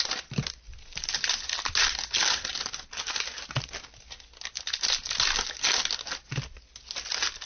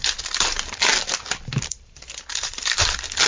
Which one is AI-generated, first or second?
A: second